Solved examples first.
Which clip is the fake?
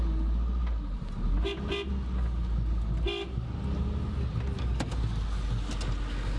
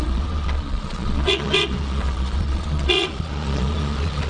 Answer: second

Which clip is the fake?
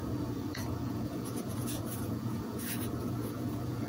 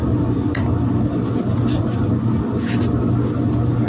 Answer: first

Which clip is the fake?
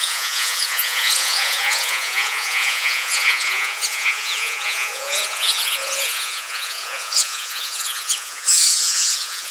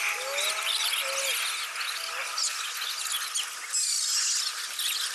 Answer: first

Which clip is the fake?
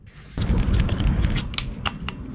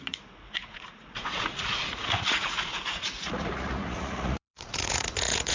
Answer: second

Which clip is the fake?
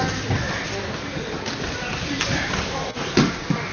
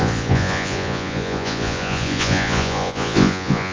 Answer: second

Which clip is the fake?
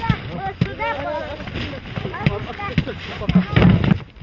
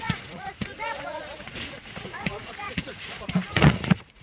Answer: second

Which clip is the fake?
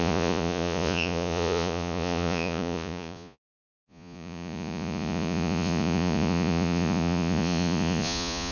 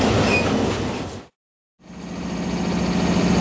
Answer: first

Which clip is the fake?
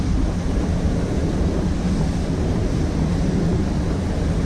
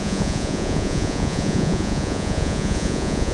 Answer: second